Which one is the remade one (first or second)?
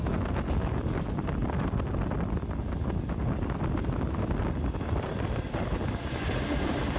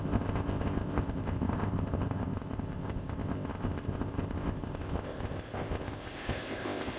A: second